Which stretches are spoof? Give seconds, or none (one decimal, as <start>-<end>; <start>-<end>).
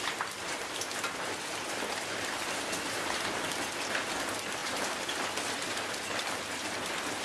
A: none